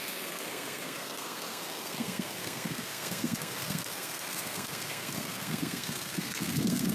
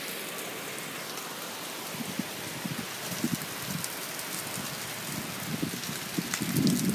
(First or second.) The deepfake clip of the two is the first